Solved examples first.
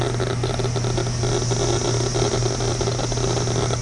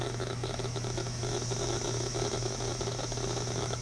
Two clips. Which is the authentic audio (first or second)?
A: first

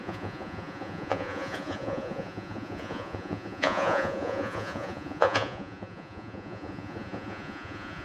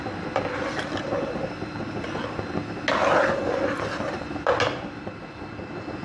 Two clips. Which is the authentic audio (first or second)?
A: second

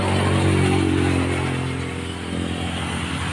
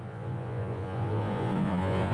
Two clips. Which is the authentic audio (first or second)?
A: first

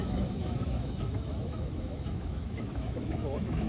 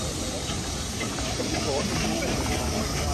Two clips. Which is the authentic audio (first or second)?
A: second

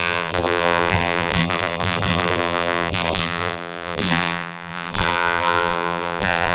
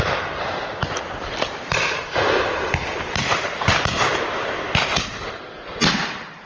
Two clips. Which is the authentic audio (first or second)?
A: second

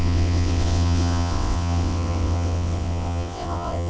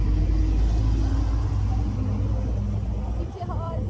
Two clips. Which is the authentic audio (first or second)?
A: second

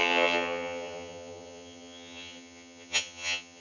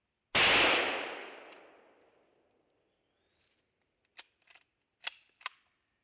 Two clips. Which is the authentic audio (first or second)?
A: second